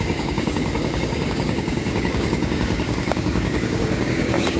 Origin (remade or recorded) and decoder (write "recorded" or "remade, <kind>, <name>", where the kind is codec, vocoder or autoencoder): remade, codec, DAC